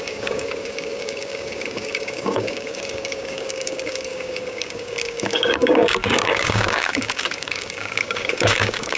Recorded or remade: remade